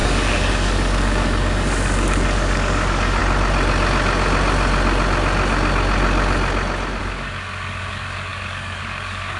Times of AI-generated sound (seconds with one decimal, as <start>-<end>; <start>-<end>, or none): 0.0-3.2; 7.0-9.4